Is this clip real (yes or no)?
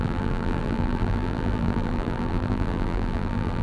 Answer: no